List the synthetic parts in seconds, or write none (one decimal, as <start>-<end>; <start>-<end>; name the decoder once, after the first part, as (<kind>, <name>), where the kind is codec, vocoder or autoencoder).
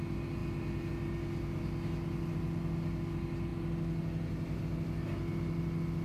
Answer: none